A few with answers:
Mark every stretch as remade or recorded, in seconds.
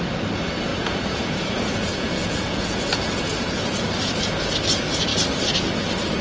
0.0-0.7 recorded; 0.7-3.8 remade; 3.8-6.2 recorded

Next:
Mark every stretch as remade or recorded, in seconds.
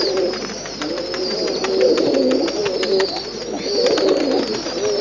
0.0-5.0 recorded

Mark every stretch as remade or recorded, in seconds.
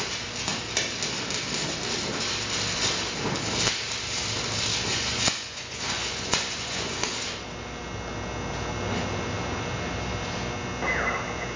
0.0-4.9 recorded; 4.9-7.2 remade; 7.2-11.6 recorded